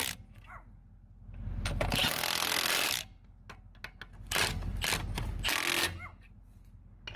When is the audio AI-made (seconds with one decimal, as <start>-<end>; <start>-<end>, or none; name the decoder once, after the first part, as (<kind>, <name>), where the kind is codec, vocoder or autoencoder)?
none